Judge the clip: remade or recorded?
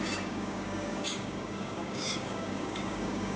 remade